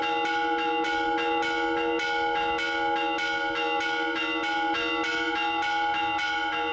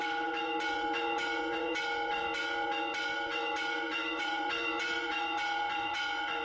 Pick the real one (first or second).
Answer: first